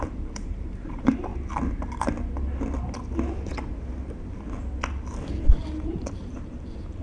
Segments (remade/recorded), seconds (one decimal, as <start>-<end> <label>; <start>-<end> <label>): 0.0-1.3 remade; 1.3-5.5 recorded; 5.5-7.0 remade